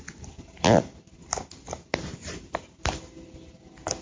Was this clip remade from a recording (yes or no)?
no